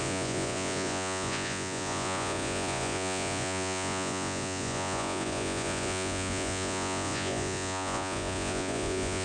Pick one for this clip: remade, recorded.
remade